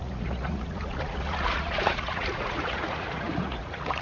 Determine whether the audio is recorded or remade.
remade